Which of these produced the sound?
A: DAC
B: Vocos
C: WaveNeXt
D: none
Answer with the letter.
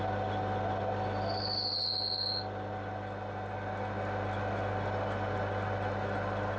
D